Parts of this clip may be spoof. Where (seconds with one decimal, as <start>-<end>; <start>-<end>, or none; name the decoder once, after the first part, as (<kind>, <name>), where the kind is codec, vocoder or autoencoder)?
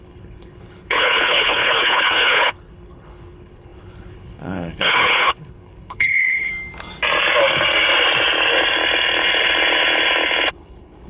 0.0-6.5 (codec, HILCodec); 10.5-11.1